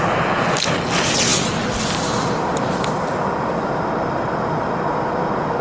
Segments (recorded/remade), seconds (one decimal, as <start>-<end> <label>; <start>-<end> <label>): 0.0-1.3 recorded; 1.3-4.7 remade; 4.7-5.6 recorded